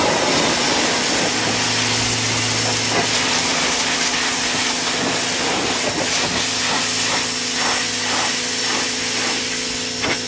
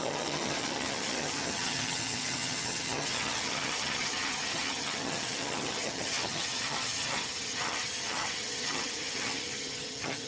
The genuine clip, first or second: first